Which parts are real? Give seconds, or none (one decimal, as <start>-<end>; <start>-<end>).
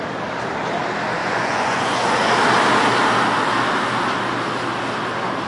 0.0-1.2; 2.3-5.5